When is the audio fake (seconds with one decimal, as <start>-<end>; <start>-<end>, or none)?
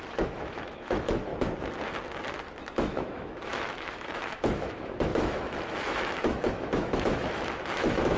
0.0-1.3; 2.6-8.2